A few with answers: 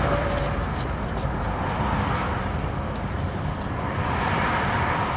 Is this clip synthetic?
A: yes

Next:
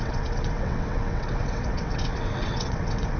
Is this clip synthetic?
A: yes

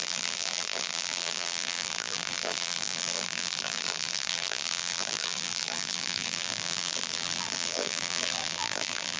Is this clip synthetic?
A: yes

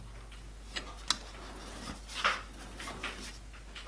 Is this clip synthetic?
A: no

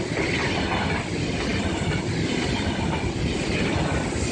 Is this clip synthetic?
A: no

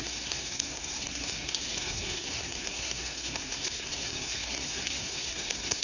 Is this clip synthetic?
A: yes